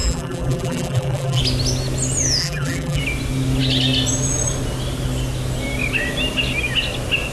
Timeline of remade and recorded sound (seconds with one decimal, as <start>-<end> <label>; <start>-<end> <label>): 0.0-1.4 remade; 1.4-2.4 recorded; 2.4-3.0 remade; 3.0-7.3 recorded